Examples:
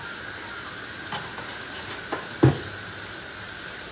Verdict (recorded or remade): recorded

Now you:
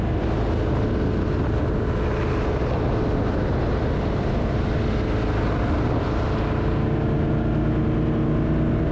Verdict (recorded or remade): recorded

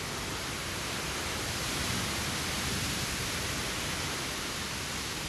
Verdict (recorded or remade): recorded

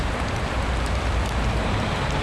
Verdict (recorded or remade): recorded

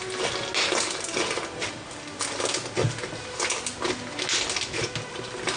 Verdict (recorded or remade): recorded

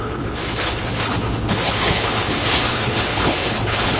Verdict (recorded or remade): remade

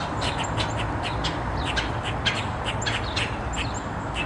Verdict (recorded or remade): recorded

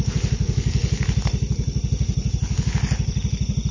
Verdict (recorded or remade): recorded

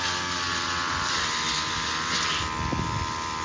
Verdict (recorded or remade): recorded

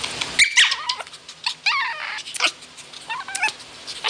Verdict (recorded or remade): recorded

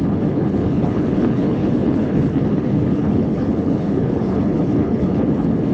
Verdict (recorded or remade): remade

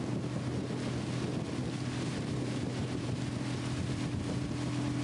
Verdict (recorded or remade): recorded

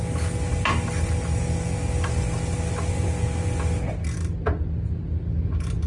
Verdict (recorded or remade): recorded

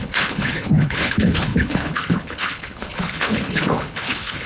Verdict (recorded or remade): remade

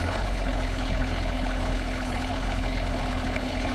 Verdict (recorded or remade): remade